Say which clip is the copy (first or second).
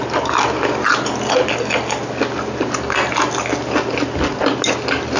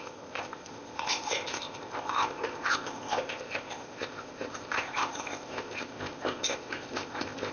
second